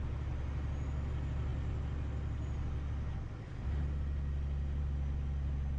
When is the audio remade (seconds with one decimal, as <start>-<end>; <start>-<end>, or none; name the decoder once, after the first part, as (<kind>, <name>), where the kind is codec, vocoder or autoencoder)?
none